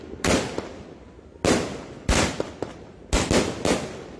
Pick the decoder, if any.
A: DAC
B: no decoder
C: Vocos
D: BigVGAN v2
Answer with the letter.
B